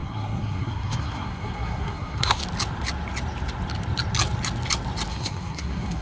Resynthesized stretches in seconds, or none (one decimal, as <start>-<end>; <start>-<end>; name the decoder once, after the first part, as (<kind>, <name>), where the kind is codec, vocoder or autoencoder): 0.0-2.4 (codec, SNAC); 5.1-6.0